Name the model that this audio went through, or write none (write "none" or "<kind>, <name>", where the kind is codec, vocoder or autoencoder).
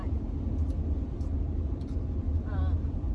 none